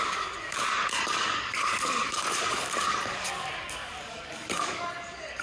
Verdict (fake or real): fake